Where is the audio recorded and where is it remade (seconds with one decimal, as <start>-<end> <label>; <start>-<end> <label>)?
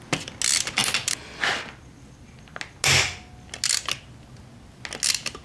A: 0.0-5.4 recorded